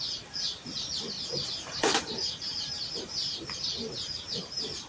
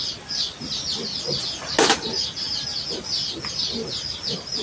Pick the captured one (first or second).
second